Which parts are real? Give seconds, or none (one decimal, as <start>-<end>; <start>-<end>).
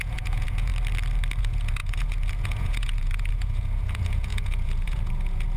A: 0.7-1.4